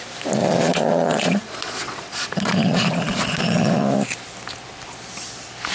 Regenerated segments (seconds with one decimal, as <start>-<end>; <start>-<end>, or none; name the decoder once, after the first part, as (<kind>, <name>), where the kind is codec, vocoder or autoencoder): 0.4-3.8 (vocoder, Vocos)